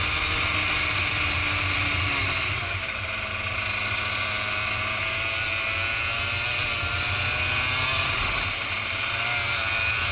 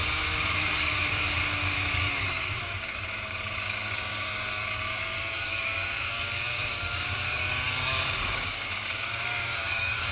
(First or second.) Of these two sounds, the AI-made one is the second